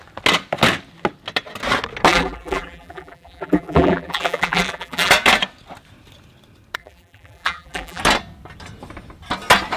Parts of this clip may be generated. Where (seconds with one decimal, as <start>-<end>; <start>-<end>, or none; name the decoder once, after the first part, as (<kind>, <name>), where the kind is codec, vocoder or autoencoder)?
2.1-5.1 (vocoder, BigVGAN v2); 6.8-8.0